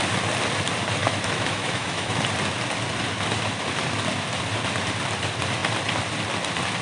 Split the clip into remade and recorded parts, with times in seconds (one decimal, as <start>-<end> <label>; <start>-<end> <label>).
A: 0.0-1.0 recorded; 1.0-2.2 remade; 2.2-6.8 recorded

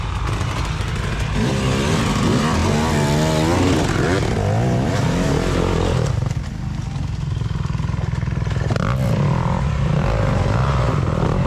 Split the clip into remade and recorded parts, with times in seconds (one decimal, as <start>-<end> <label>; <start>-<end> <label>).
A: 0.0-11.5 recorded

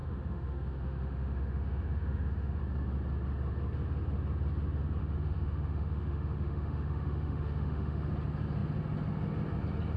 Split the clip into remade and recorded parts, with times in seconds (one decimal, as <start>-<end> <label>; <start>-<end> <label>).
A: 0.0-2.6 remade; 2.6-5.0 recorded; 5.0-8.1 remade; 8.1-10.0 recorded